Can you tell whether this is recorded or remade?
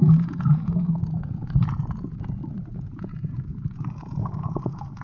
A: remade